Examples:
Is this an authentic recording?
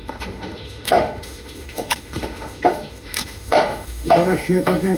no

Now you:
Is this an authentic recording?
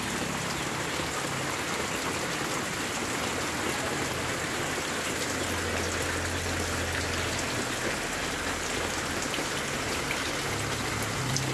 yes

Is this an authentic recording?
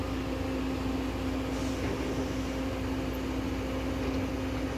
yes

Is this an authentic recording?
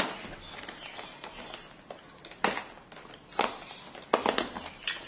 yes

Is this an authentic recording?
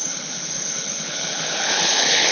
no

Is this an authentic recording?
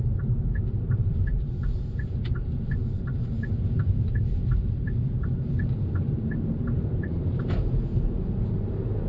no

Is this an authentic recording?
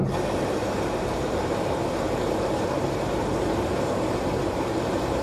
no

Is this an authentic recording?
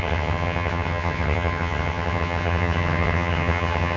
no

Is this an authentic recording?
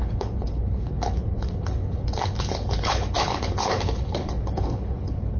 no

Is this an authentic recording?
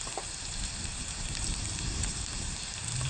no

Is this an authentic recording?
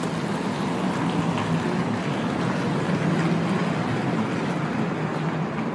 yes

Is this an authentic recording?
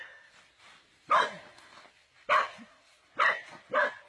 yes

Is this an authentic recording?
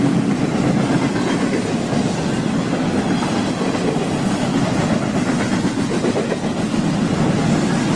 yes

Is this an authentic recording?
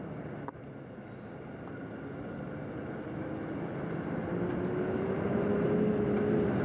yes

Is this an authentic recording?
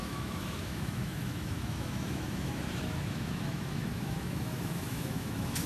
no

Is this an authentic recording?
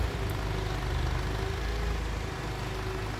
yes